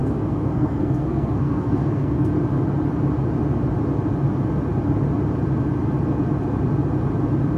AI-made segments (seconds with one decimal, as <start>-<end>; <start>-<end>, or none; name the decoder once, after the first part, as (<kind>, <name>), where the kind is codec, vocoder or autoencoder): 0.0-2.3 (codec, SNAC)